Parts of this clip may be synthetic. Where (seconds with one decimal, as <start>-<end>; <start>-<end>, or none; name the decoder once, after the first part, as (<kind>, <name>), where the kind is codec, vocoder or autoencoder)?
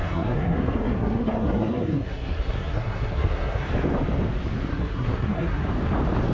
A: 0.0-3.7 (codec, SNAC); 4.7-5.7